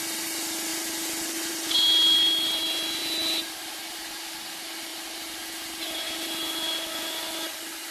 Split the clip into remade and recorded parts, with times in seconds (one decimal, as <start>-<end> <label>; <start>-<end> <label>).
0.0-7.9 recorded